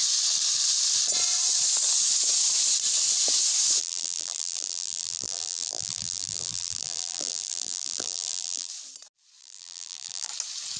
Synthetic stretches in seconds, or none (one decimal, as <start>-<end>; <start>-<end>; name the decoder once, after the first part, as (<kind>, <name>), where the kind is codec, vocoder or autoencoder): 3.8-8.7 (vocoder, BigVGAN v2); 9.4-10.3